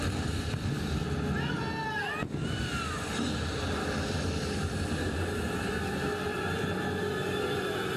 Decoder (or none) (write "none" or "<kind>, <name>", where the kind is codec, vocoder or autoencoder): none